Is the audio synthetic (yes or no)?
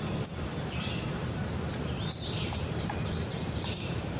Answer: yes